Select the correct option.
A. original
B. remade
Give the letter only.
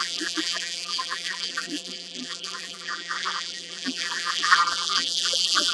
B